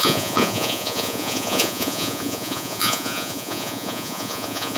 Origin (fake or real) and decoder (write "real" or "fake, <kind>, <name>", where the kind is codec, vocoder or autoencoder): fake, vocoder, Vocos